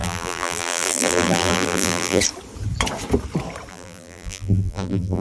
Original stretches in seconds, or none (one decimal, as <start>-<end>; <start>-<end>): 2.2-3.7